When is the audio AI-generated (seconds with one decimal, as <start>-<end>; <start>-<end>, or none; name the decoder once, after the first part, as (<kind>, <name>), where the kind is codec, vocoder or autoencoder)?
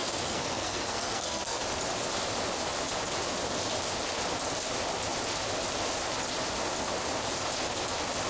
0.0-1.6 (codec, SNAC)